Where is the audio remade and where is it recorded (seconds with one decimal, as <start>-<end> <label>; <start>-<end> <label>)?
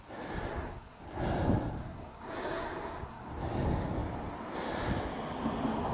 0.0-0.5 recorded; 0.5-1.0 remade; 1.0-1.8 recorded; 1.8-3.3 remade; 3.3-5.9 recorded